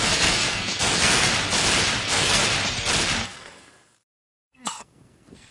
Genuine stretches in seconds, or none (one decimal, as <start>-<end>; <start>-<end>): 1.3-2.0; 2.4-3.2

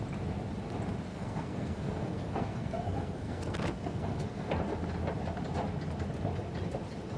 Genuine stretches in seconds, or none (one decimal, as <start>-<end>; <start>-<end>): 0.0-1.1; 4.5-7.2

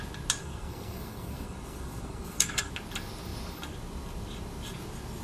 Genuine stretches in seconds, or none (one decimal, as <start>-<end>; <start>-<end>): 0.0-0.4; 2.7-5.2

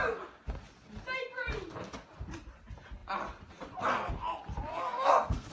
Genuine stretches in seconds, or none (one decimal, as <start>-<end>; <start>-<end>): 0.0-4.7

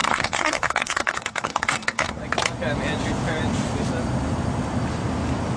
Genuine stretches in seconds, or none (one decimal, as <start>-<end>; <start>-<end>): 2.2-5.6

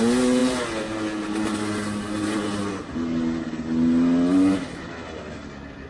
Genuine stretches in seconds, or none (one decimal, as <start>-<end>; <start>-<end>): 0.0-5.9

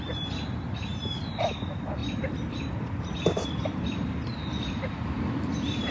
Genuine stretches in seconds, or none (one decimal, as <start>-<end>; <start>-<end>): 0.0-5.9

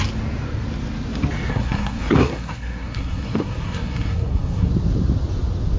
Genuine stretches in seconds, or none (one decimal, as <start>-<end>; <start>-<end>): 0.0-1.5; 4.7-5.8